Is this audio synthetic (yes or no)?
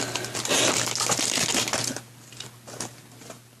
no